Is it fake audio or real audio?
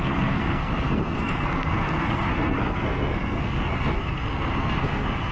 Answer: fake